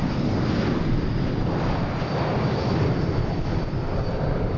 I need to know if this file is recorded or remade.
recorded